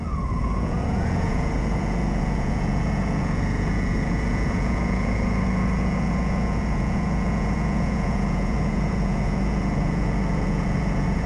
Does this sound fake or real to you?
fake